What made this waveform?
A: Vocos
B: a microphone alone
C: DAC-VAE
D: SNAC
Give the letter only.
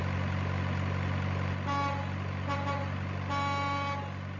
B